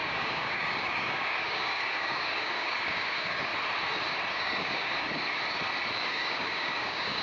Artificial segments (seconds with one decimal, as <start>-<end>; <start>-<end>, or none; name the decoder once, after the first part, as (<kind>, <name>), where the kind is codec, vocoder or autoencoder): 0.0-3.5 (codec, DAC); 4.3-5.1; 6.0-7.2